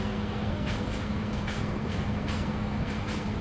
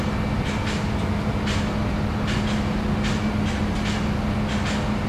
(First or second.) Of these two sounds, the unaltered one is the second